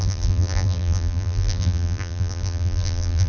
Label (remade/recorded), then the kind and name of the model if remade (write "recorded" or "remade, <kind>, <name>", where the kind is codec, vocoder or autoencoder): remade, vocoder, BigVGAN v2